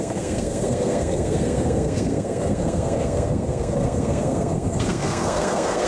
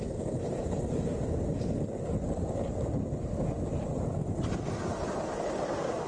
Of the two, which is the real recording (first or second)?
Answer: second